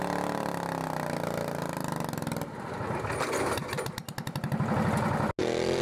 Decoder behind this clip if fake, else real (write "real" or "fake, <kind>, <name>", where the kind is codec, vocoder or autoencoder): real